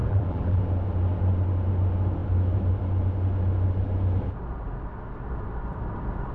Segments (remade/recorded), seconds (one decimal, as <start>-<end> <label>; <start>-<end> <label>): 0.0-0.6 remade; 0.6-6.3 recorded